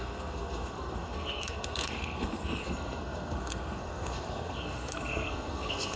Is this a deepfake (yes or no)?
yes